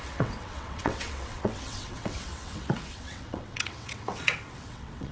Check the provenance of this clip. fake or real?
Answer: fake